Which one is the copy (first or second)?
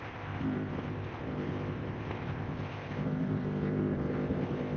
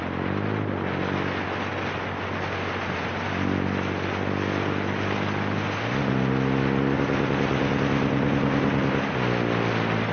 first